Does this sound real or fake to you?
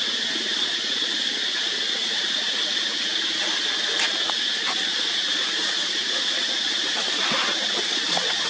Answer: fake